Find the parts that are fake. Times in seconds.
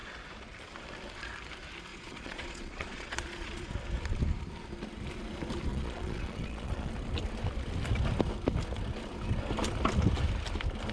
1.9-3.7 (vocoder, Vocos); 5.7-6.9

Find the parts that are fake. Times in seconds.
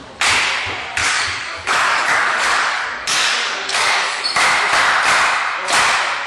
1.0-4.2 (codec, DAC)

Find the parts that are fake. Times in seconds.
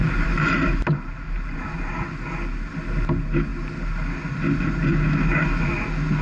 0.0-2.0 (vocoder, BigVGAN v2)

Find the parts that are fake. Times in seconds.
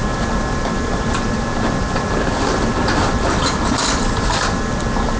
none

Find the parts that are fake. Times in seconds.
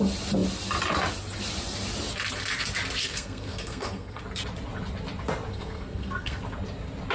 3.0-4.2 (codec, SNAC); 5.5-6.4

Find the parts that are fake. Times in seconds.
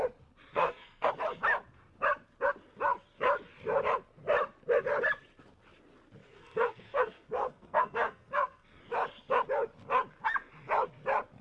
0.5-1.1 (codec, SNAC); 6.2-8.8